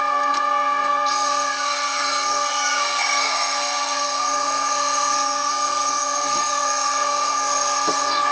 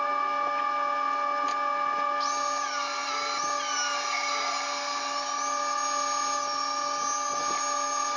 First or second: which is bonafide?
second